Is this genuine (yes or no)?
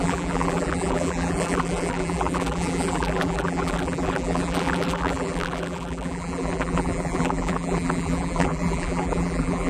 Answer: no